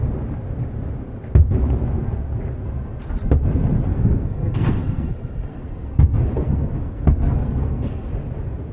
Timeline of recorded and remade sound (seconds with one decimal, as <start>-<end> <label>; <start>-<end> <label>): 0.0-3.9 recorded; 3.9-5.1 remade; 5.1-5.5 recorded; 5.5-8.1 remade; 8.1-8.7 recorded